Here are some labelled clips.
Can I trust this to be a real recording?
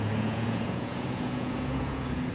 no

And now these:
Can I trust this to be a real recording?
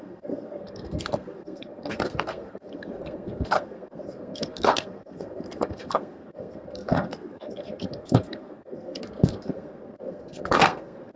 no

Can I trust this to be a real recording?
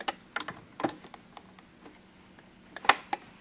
yes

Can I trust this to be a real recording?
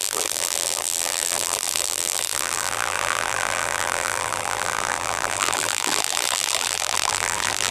no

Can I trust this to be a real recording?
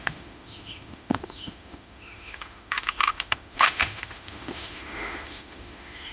no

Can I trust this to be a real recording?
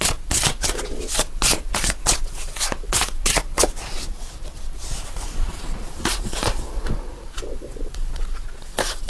no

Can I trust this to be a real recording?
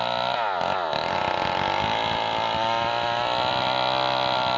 yes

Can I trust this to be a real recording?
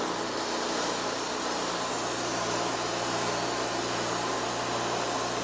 yes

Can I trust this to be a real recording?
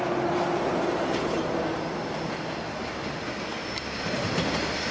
yes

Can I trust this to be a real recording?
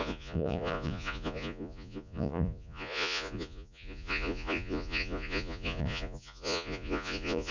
no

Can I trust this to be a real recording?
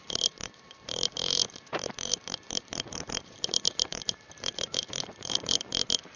no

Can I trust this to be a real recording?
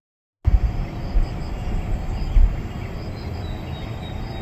yes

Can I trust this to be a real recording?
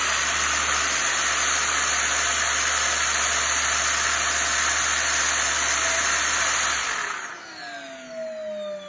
yes